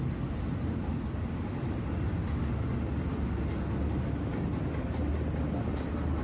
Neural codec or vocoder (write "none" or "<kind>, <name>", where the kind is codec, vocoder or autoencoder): none